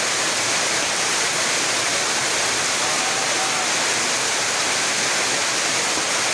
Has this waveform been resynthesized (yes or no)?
no